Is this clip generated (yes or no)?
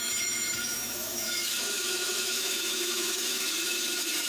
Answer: yes